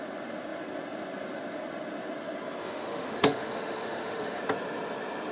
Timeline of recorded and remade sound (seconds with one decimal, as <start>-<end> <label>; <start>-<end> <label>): 0.0-2.6 recorded; 2.6-4.4 remade; 4.4-5.3 recorded